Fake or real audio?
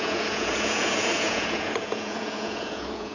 fake